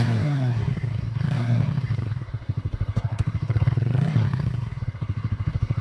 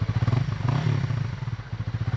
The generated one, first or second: first